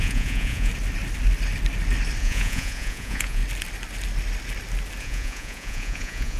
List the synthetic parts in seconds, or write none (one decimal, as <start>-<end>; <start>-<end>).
0.0-0.7; 2.2-3.4; 5.0-6.4